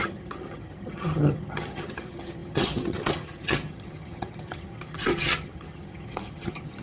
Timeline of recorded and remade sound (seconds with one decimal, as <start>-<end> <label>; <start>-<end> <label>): 0.0-6.8 remade

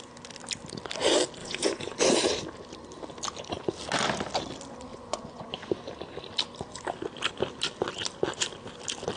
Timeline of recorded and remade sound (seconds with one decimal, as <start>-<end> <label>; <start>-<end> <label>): 0.0-1.4 recorded; 1.4-2.0 remade; 2.0-4.9 recorded; 4.9-5.5 remade; 5.5-9.2 recorded

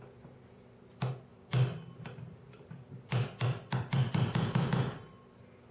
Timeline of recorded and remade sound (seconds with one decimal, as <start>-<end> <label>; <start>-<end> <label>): 0.0-1.3 recorded; 1.3-4.7 remade; 4.7-5.7 recorded

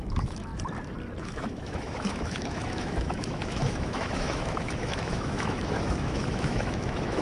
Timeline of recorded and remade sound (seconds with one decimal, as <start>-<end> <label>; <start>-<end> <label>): 0.0-0.5 remade; 0.5-1.2 recorded; 1.2-7.2 remade

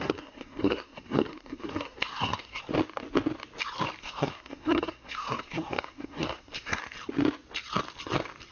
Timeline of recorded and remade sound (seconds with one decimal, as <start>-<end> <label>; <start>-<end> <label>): 0.0-2.6 remade; 2.6-4.0 recorded; 4.0-6.8 remade; 6.8-8.5 recorded

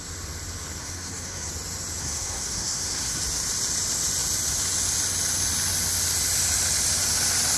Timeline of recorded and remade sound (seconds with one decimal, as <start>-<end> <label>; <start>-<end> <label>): 0.0-0.8 recorded; 0.8-1.5 remade; 1.5-2.0 recorded; 2.0-3.2 remade; 3.2-7.6 recorded

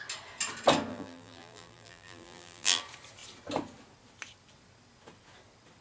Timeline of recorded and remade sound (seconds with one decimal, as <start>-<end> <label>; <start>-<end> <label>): 0.0-0.9 recorded; 0.9-2.8 remade; 2.8-5.8 recorded